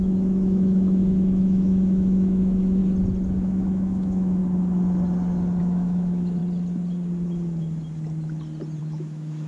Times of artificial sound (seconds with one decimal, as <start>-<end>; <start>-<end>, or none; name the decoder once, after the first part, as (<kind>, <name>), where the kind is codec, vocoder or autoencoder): 0.0-2.8 (autoencoder, DAC-VAE); 3.4-4.4; 5.6-6.4; 8.8-9.5